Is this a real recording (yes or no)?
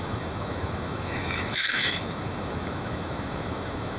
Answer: no